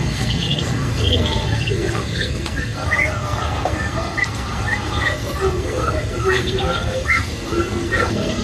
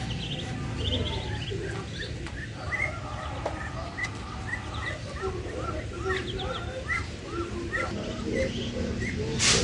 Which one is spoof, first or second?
first